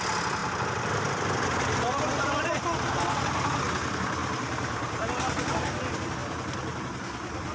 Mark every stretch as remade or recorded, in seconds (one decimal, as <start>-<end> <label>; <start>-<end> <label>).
0.0-4.2 recorded; 4.2-5.1 remade; 5.1-7.5 recorded